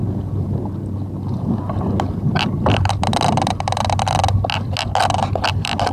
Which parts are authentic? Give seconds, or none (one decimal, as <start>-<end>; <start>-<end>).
0.0-5.9

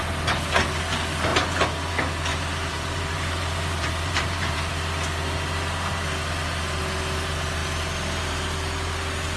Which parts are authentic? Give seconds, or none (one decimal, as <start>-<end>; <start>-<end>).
0.0-2.3; 4.7-9.4